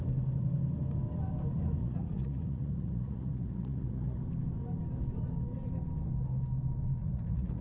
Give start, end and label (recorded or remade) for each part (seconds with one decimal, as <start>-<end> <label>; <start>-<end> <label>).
0.0-1.8 recorded; 1.8-4.2 remade; 4.2-7.0 recorded; 7.0-7.6 remade